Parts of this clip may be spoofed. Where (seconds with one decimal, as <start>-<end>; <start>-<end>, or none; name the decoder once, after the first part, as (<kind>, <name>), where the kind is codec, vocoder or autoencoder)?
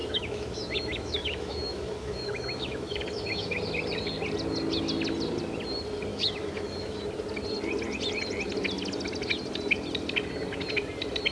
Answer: 0.0-3.6 (autoencoder, DAC-VAE); 6.1-7.0